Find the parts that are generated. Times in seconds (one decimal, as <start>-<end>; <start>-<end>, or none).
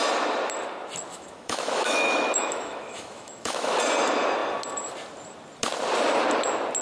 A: 1.1-3.8